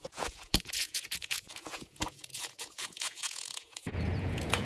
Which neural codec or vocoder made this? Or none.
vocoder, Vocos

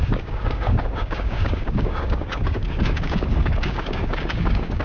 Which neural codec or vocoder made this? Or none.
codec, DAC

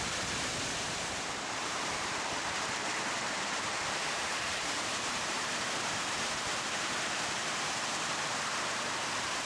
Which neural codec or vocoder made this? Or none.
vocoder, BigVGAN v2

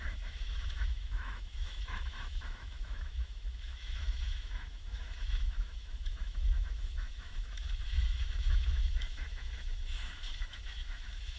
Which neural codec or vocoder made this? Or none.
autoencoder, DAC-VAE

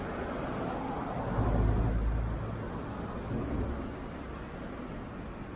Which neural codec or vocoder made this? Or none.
none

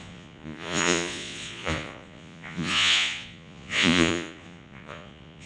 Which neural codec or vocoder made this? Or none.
vocoder, Vocos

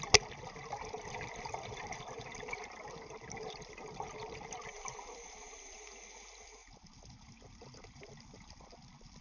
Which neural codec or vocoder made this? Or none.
none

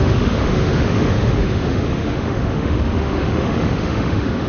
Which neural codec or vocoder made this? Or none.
autoencoder, DAC-VAE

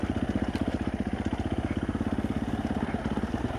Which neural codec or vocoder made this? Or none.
none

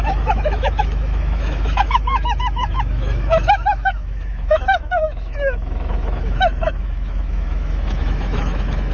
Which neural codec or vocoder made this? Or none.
autoencoder, DAC-VAE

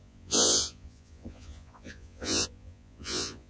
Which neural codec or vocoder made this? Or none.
vocoder, Vocos